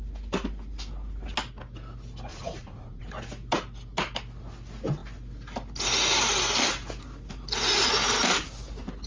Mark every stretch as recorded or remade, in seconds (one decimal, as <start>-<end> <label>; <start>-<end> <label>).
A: 0.0-2.3 recorded; 2.3-3.0 remade; 3.0-9.1 recorded